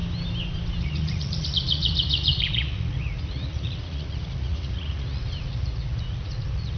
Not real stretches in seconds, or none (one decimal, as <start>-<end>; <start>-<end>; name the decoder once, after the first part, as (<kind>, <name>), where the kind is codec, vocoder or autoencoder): 0.8-6.8 (vocoder, Vocos)

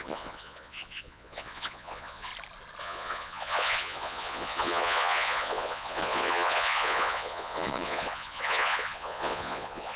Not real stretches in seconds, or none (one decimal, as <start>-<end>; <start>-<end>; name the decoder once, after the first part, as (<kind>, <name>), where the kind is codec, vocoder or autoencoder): 0.0-2.3 (vocoder, Vocos); 2.8-10.0

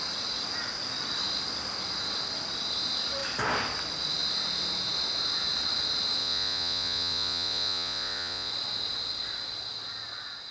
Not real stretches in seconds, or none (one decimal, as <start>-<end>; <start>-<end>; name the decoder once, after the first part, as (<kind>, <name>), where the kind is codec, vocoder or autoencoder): 6.2-8.5 (vocoder, Vocos)

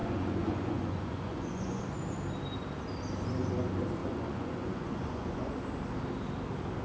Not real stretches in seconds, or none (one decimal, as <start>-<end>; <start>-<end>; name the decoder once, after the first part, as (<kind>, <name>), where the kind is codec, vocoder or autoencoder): 0.0-1.8 (vocoder, Vocos); 4.0-5.5